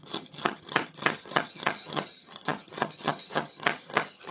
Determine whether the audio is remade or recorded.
remade